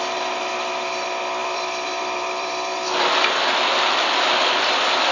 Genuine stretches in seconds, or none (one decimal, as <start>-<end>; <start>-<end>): 0.0-1.4; 4.4-5.1